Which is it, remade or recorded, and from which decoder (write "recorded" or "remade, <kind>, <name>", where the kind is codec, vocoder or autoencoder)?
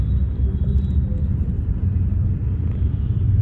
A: recorded